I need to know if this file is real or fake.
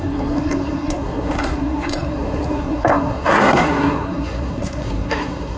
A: fake